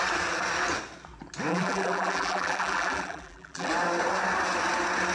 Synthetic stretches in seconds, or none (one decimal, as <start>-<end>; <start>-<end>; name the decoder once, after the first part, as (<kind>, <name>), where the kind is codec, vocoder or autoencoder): 1.5-3.7 (vocoder, BigVGAN v2)